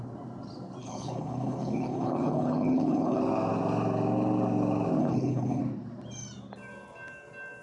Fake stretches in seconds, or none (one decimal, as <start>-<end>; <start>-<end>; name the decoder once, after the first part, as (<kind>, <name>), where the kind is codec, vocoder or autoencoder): 0.8-3.2 (codec, HILCodec); 5.0-5.6